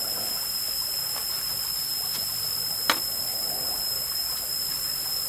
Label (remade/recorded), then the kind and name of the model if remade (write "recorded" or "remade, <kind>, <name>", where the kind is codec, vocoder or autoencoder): recorded